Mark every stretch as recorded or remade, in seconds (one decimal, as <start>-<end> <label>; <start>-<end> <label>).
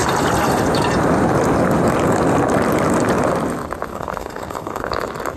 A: 0.0-3.9 recorded; 3.9-4.9 remade; 4.9-5.4 recorded